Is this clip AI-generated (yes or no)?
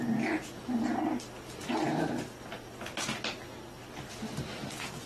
no